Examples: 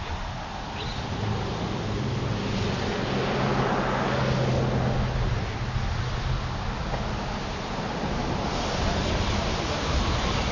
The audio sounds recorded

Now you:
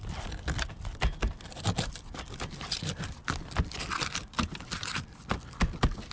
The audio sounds recorded